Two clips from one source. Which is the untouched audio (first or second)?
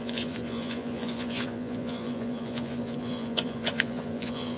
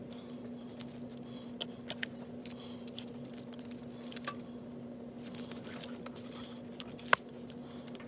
second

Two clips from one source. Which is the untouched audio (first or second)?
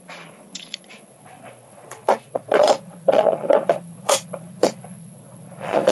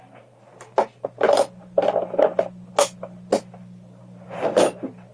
second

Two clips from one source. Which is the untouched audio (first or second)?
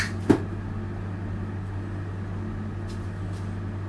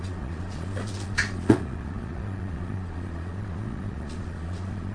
first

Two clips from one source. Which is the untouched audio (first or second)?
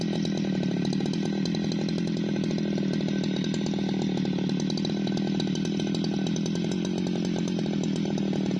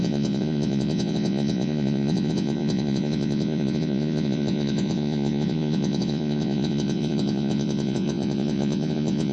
first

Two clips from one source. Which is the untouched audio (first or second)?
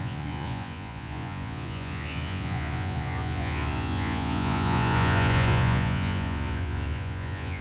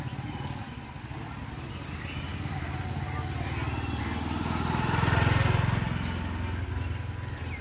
second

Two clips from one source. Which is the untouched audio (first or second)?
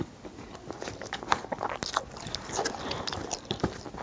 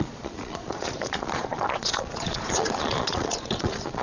first